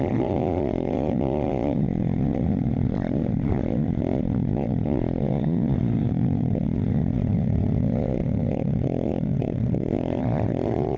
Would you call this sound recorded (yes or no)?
no